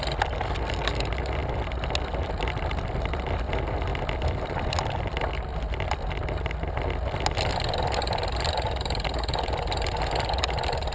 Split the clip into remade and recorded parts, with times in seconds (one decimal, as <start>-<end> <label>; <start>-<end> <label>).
0.0-10.9 recorded